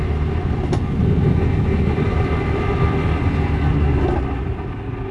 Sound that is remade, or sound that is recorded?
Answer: recorded